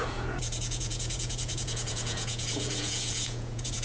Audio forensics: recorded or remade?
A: remade